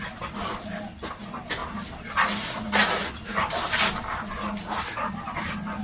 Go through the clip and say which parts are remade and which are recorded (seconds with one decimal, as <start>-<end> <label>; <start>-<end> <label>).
0.0-5.8 recorded